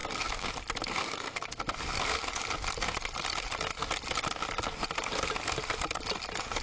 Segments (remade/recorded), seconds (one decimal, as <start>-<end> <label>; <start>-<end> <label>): 0.0-0.5 remade; 0.5-1.0 recorded; 1.0-1.6 remade; 1.6-6.6 recorded